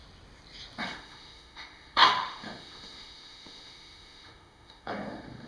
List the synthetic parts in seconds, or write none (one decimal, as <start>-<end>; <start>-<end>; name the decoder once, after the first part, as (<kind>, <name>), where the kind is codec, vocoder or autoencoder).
0.8-5.5 (autoencoder, DAC-VAE)